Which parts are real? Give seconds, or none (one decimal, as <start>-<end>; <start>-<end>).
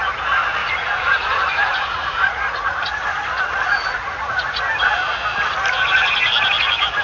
0.0-0.6; 4.6-7.0